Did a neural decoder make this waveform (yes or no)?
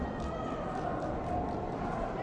no